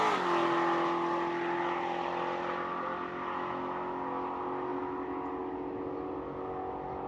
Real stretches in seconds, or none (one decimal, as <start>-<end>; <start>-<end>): 0.0-7.1